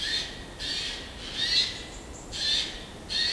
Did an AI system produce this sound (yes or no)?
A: no